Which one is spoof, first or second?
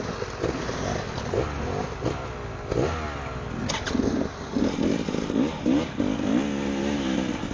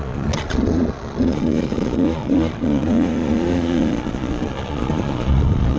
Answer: second